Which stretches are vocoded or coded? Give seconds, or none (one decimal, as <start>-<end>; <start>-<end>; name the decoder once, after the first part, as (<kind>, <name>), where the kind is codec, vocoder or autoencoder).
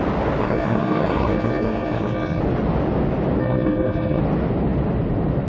0.4-2.4 (codec, SNAC); 3.4-4.2